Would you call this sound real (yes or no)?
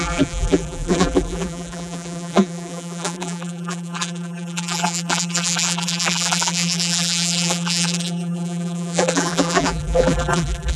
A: no